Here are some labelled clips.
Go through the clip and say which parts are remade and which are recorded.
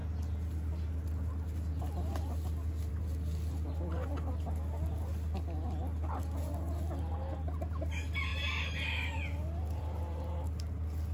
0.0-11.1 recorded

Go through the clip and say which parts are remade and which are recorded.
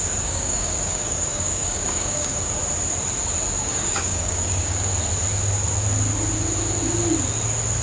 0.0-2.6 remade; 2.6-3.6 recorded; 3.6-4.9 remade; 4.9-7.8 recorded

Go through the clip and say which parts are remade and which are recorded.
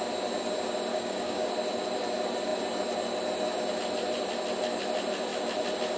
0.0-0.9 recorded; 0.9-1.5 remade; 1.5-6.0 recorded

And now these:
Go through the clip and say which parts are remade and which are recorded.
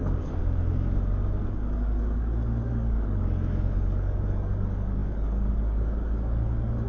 0.0-0.4 remade; 0.4-1.5 recorded; 1.5-6.9 remade